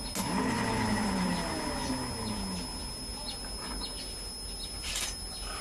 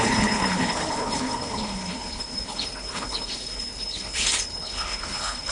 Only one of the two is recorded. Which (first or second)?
first